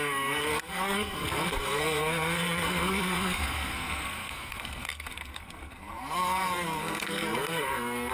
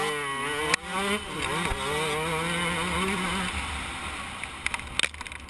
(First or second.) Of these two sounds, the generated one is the first